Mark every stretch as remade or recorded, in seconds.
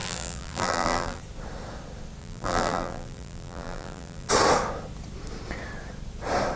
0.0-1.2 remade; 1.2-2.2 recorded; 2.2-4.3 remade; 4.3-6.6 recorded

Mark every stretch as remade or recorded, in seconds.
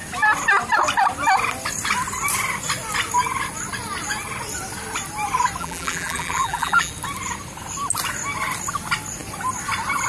0.0-5.6 recorded; 5.6-6.9 remade; 6.9-10.1 recorded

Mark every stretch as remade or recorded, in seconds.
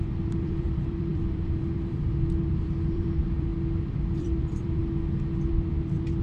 0.0-3.5 remade; 3.5-4.2 recorded; 4.2-4.8 remade; 4.8-5.5 recorded; 5.5-6.2 remade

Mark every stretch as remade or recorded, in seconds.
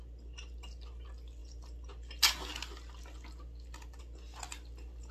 0.0-5.1 recorded